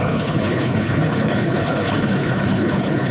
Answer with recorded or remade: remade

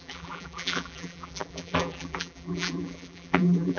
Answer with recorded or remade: remade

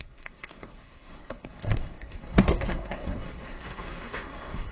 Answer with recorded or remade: remade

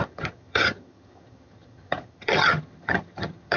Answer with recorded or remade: remade